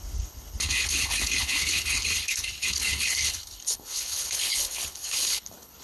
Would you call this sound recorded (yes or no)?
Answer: no